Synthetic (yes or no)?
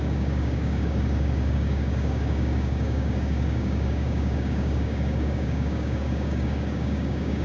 yes